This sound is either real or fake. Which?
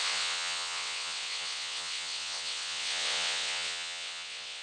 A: fake